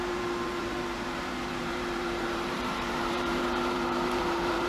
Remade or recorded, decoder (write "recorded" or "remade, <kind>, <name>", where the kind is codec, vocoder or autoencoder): remade, vocoder, BigVGAN v2